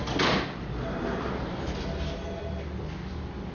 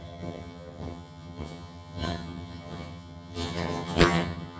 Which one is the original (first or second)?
first